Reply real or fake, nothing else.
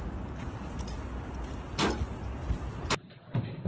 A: real